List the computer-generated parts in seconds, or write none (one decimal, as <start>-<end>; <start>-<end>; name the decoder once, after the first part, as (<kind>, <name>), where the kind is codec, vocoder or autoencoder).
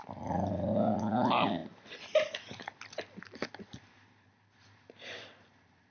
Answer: none